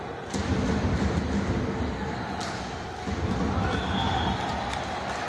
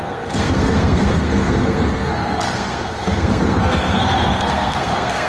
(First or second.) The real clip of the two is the first